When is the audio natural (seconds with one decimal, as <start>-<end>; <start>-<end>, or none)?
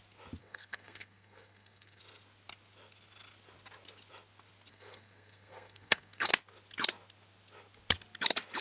0.0-0.4; 2.0-4.7; 6.3-8.6